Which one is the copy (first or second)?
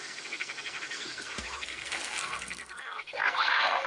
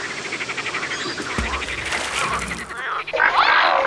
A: first